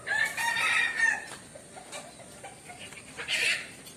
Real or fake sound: real